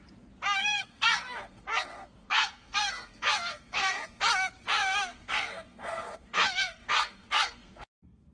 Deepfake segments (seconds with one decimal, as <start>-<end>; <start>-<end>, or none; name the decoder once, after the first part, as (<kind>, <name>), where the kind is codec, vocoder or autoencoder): 0.6-4.2 (codec, SNAC); 4.8-8.3